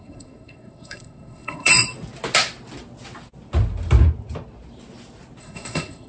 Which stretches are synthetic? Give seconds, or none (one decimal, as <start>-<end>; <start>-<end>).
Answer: 0.0-1.7; 5.4-6.1